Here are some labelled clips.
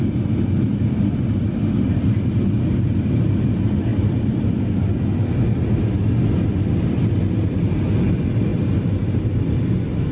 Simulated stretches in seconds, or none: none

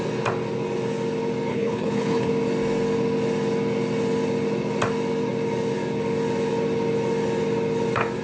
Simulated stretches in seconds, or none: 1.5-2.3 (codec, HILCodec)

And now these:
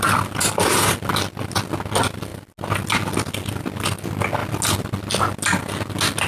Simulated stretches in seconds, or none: none

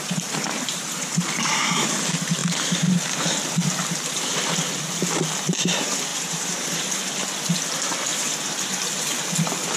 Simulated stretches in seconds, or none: 6.1-7.1 (vocoder, BigVGAN v2); 8.1-8.7

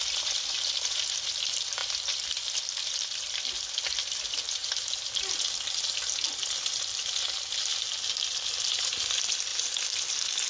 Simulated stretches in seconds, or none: 0.0-4.6 (vocoder, BigVGAN v2); 6.3-7.7; 8.2-9.5

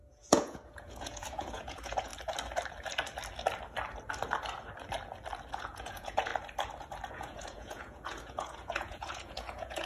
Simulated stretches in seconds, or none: 0.0-2.1 (vocoder, Vocos); 5.5-6.3; 7.1-9.9

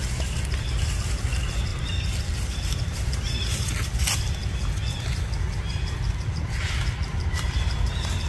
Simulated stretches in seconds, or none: none

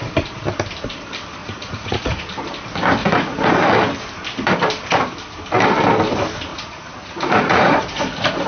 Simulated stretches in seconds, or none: 1.4-2.2 (vocoder, Vocos); 3.0-3.5; 6.5-8.5